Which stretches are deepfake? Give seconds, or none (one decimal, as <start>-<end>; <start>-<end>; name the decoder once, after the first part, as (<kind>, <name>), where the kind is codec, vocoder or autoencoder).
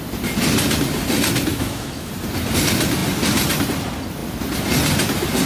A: 1.5-2.1 (autoencoder, DAC-VAE)